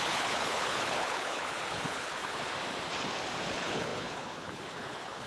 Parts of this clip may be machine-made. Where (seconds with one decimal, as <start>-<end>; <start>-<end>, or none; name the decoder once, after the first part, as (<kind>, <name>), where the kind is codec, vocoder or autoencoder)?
0.0-2.5 (codec, HILCodec); 3.5-5.3